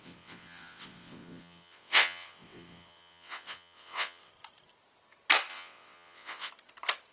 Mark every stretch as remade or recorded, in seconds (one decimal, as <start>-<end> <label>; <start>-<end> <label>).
0.0-4.3 remade; 4.3-5.5 recorded; 5.5-6.5 remade; 6.5-7.1 recorded